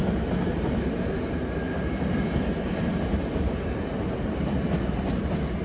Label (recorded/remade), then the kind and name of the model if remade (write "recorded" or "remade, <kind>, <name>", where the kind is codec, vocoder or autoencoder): recorded